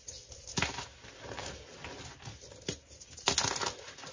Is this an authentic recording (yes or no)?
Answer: yes